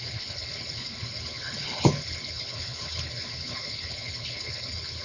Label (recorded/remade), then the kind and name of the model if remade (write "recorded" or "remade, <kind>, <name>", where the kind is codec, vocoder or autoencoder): remade, codec, HILCodec